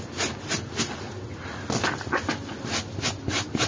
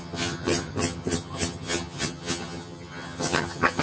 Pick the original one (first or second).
first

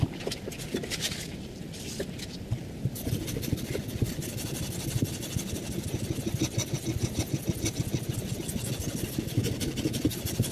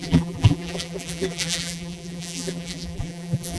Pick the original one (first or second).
first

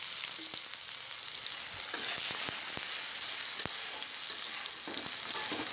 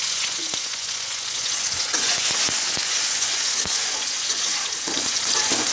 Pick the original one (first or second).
first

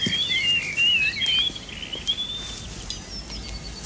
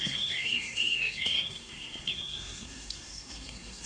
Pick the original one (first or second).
first